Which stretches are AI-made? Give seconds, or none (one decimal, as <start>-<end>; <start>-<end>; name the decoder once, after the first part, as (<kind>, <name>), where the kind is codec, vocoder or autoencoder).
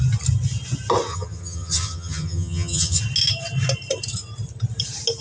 1.1-3.0 (vocoder, HiFi-GAN)